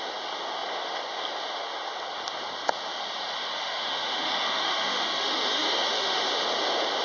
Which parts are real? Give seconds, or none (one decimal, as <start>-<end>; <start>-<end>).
0.0-3.5; 6.3-7.0